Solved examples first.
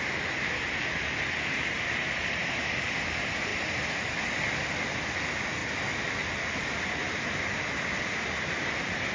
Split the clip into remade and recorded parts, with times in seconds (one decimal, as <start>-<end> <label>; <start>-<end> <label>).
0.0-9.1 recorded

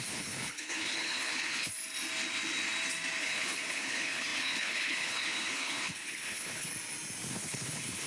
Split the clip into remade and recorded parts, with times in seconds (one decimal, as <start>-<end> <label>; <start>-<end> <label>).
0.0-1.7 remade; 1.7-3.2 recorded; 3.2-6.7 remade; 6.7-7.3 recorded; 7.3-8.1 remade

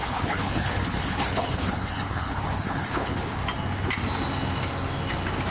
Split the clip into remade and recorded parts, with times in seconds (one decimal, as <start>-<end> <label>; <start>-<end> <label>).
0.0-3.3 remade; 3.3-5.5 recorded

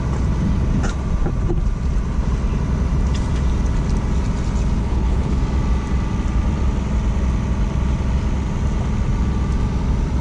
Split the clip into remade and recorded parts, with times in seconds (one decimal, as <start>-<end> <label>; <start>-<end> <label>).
0.0-4.8 recorded; 4.8-5.4 remade; 5.4-10.2 recorded

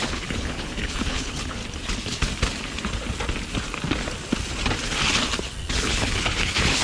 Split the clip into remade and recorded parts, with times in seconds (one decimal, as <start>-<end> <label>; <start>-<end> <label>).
0.0-1.6 remade; 1.6-5.7 recorded; 5.7-6.8 remade

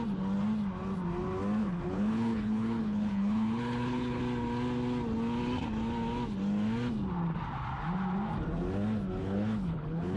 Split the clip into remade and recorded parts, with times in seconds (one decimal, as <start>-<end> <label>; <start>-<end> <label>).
0.0-1.6 recorded; 1.6-4.2 remade; 4.2-9.2 recorded; 9.2-10.2 remade